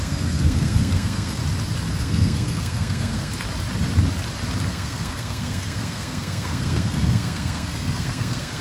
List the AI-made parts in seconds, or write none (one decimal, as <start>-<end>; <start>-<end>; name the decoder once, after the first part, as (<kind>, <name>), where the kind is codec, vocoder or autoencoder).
0.0-1.4 (codec, SNAC); 1.9-3.3; 4.7-8.6